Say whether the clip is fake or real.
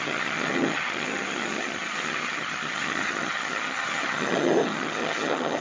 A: fake